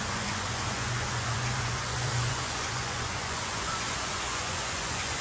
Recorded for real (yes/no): no